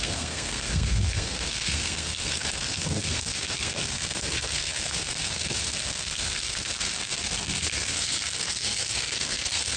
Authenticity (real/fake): fake